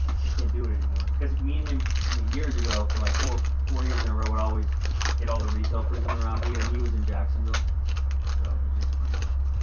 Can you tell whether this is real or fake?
fake